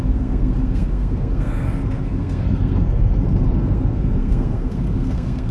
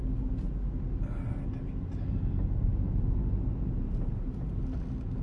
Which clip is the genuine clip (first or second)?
second